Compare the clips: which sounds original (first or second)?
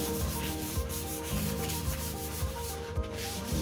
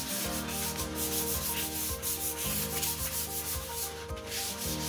second